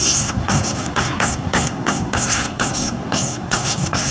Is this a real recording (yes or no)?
no